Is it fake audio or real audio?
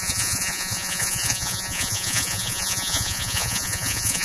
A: fake